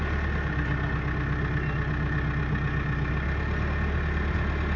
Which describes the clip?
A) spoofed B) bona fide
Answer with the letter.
B